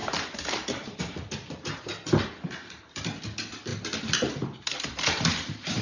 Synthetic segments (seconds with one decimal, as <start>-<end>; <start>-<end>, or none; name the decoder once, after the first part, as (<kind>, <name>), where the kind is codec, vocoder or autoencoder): 0.0-1.9 (vocoder, BigVGAN v2); 2.8-3.7; 4.3-5.8